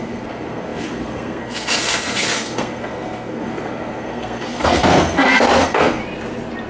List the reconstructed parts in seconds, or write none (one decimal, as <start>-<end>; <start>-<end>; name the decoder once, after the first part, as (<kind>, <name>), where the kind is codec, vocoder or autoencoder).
0.0-6.0 (codec, SNAC)